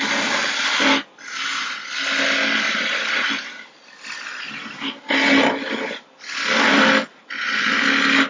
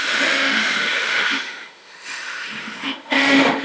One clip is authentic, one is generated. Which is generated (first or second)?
second